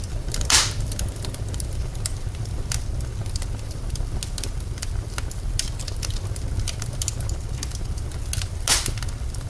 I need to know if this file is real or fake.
real